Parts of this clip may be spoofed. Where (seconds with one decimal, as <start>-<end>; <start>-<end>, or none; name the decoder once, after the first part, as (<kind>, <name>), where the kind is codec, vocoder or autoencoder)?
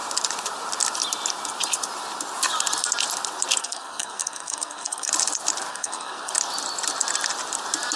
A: 3.6-5.1 (codec, SNAC); 5.7-6.3